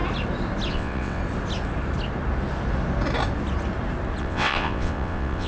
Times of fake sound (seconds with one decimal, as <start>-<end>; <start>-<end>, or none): 0.7-1.2; 4.2-5.5